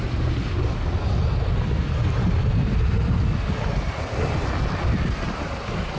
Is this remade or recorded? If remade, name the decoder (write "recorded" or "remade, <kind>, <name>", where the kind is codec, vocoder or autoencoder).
recorded